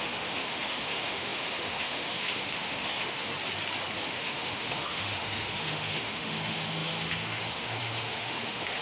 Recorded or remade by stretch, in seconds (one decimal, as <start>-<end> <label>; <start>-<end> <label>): 0.0-3.3 remade; 3.3-4.0 recorded; 4.0-8.8 remade